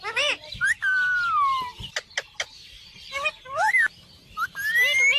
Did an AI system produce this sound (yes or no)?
no